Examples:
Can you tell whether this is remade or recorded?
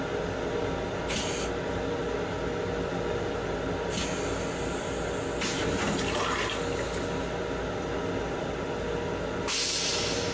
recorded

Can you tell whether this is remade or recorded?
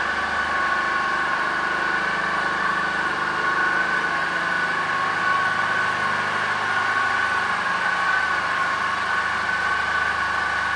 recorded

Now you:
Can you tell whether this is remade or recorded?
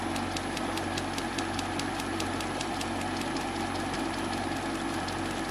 recorded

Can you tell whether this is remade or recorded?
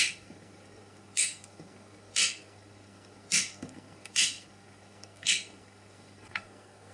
remade